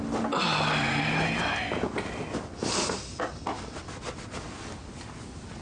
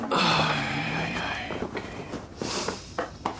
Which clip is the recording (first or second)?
first